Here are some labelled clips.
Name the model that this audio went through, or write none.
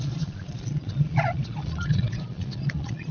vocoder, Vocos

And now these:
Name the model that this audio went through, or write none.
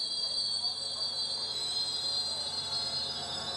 none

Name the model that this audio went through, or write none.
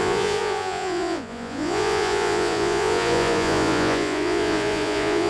vocoder, Vocos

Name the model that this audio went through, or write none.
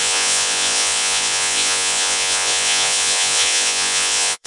vocoder, Vocos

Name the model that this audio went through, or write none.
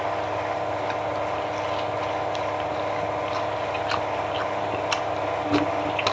none